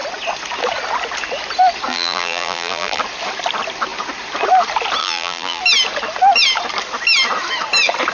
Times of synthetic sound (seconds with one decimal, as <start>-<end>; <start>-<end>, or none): 1.9-3.0; 5.0-5.6